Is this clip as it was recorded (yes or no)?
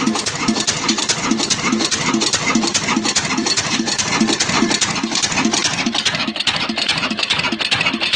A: no